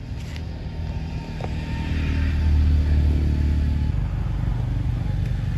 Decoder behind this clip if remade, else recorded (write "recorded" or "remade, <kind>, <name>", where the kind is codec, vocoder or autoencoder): recorded